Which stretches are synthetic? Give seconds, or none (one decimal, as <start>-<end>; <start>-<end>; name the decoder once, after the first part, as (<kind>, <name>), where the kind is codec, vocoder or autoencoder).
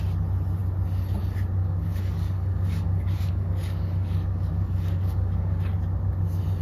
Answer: 1.6-5.6 (codec, DAC)